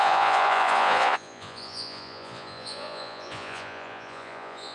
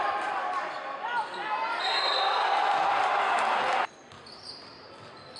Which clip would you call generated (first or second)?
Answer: first